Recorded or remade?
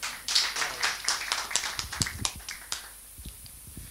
remade